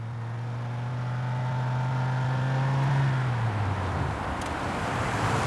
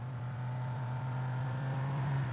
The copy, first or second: second